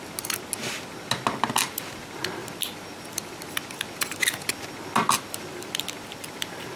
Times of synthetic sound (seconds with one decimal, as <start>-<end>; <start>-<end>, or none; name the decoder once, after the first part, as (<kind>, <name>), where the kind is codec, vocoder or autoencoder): none